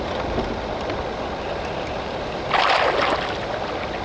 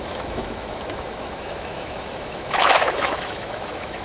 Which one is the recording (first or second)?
first